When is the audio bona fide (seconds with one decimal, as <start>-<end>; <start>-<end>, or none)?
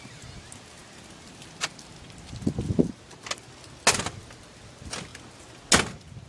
0.0-6.3